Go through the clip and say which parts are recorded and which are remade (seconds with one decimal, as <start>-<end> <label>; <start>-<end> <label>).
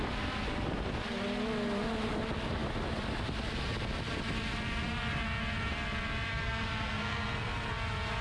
0.0-6.3 recorded; 6.3-7.7 remade; 7.7-8.2 recorded